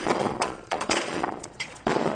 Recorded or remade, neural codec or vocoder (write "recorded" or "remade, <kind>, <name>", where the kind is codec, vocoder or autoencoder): remade, vocoder, Vocos